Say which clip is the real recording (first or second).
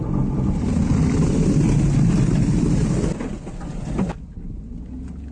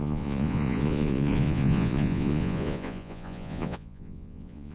first